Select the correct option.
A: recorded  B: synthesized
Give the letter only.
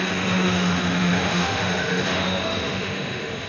B